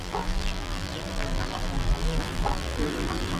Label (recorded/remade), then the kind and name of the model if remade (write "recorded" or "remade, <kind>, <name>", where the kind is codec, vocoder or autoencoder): remade, vocoder, BigVGAN v2